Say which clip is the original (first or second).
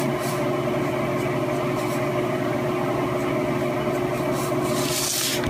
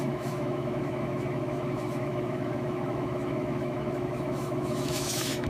first